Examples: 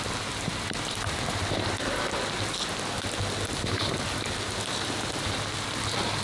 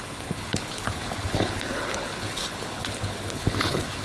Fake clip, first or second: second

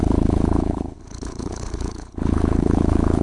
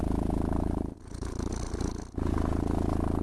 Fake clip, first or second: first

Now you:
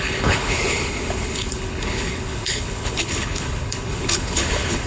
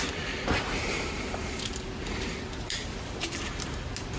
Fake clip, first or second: first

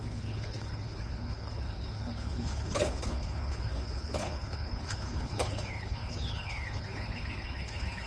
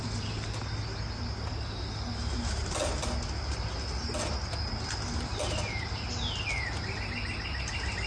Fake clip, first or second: first